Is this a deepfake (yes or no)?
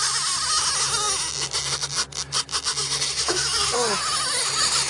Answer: no